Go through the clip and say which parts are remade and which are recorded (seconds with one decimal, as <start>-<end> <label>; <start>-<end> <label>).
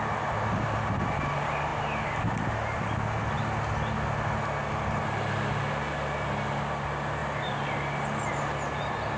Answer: 0.0-9.2 recorded